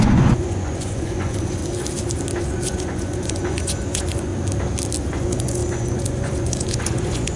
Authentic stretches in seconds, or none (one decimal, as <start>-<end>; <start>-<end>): 1.6-2.4; 4.3-5.0